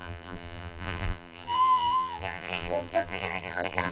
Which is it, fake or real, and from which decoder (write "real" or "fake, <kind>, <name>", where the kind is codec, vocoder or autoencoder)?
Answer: fake, vocoder, BigVGAN v2